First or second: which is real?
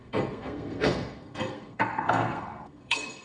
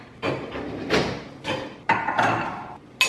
second